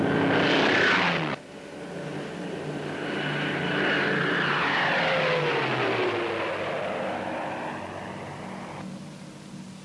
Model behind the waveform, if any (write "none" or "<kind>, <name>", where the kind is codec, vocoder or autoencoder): none